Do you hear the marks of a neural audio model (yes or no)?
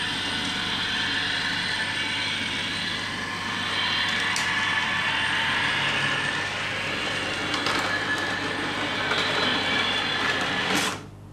no